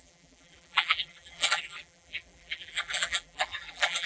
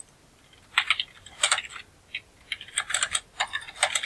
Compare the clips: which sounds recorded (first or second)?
second